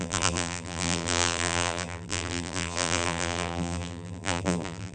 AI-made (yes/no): yes